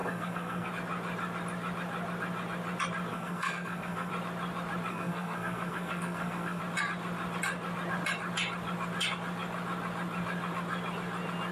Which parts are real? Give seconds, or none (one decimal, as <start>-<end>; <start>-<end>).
0.7-3.1; 4.1-4.9; 6.6-11.5

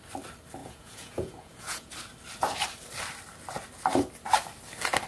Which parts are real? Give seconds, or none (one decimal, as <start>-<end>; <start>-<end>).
0.0-0.6; 1.9-5.1